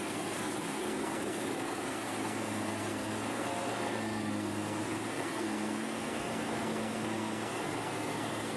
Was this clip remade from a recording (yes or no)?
yes